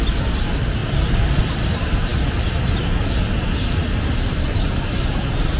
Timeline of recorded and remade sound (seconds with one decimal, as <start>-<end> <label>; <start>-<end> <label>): 0.0-5.6 recorded